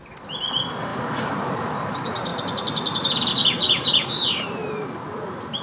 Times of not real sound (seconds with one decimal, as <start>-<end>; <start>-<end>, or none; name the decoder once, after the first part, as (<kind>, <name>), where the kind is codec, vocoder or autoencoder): none

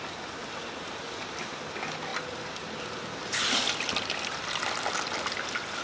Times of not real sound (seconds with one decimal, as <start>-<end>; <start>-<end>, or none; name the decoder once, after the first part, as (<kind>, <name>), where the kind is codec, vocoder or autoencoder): none

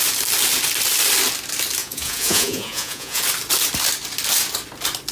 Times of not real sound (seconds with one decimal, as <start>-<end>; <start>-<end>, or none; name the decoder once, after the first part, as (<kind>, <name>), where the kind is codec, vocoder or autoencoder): 1.8-3.2 (vocoder, Vocos)

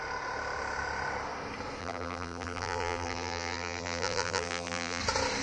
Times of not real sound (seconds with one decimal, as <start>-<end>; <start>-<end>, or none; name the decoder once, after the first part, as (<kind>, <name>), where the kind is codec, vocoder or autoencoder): 1.8-5.0 (vocoder, BigVGAN v2)

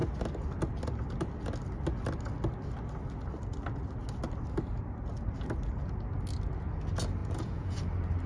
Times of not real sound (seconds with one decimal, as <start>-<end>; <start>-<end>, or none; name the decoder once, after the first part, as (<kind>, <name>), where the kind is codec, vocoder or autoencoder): 7.2-7.8 (vocoder, Vocos)

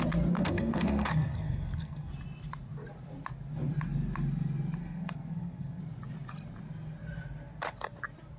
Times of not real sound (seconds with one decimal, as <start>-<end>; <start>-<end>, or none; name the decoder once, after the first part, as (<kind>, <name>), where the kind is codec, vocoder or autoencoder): 0.4-2.1 (codec, SNAC); 4.8-5.8

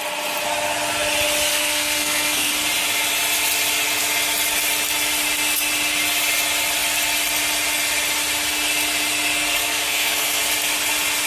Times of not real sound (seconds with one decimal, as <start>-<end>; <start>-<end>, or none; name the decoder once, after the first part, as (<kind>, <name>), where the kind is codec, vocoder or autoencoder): 1.5-2.5 (codec, SNAC); 9.6-10.4

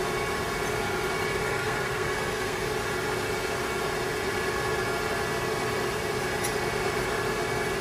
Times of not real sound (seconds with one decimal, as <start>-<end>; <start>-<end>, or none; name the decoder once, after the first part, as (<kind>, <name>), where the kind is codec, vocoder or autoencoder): 1.4-2.6 (codec, SNAC)